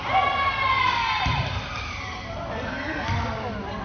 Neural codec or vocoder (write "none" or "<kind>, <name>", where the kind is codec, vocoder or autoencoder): none